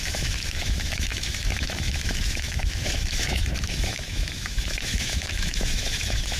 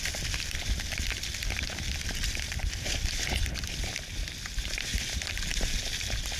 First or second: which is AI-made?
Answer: first